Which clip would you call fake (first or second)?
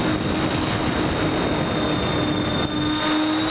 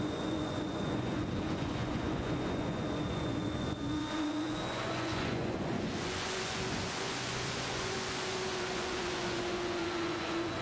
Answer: second